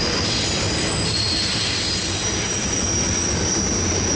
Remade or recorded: recorded